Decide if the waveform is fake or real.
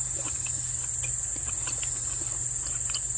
real